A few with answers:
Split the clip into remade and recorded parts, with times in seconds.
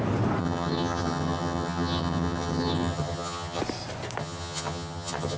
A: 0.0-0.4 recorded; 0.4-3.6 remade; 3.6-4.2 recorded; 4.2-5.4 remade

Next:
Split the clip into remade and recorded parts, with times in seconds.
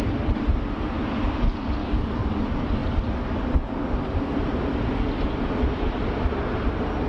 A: 0.0-1.8 recorded; 1.8-2.4 remade; 2.4-7.1 recorded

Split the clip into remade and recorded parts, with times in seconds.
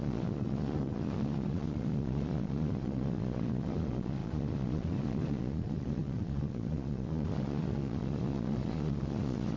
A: 0.0-9.6 remade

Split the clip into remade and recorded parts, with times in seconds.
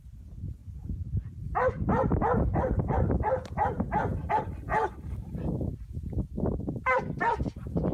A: 0.0-0.6 recorded; 0.6-4.3 remade; 4.3-7.9 recorded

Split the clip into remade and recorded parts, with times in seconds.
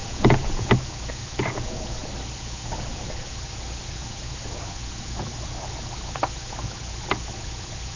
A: 0.0-0.7 remade; 0.7-8.0 recorded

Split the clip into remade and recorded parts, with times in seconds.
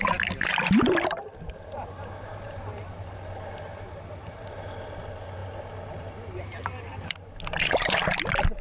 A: 0.0-0.5 recorded; 0.5-4.9 remade; 4.9-8.6 recorded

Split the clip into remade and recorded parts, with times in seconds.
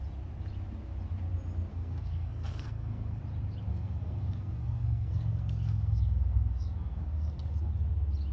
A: 0.0-1.7 recorded; 1.7-3.2 remade; 3.2-3.7 recorded; 3.7-7.7 remade; 7.7-8.3 recorded